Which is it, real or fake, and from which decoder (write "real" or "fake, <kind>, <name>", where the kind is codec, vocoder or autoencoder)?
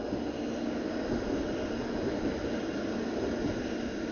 real